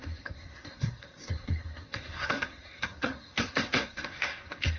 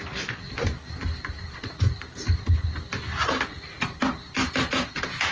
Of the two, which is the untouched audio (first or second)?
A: second